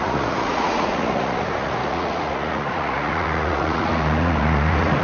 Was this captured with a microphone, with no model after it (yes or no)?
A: no